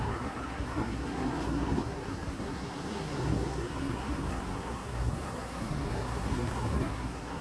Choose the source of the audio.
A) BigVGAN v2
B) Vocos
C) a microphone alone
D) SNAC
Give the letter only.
D